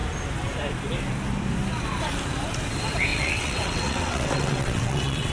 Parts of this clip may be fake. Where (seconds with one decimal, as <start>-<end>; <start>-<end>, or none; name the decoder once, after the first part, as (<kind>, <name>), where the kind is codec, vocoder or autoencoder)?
3.1-5.3 (vocoder, WaveNeXt)

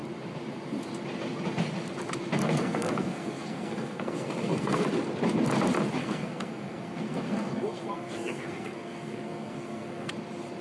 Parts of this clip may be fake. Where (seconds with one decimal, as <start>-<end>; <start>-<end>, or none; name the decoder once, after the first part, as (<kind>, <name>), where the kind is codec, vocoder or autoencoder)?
2.4-4.9 (codec, SNAC); 6.0-10.1